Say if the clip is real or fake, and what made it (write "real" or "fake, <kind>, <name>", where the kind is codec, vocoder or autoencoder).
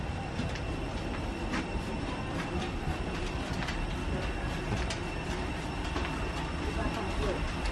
real